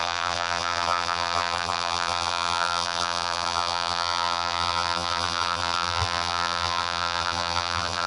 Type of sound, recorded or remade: remade